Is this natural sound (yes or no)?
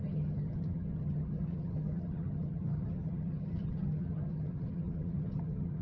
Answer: no